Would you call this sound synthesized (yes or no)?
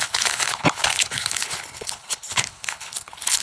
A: yes